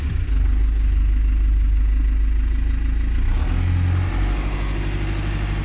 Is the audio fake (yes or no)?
no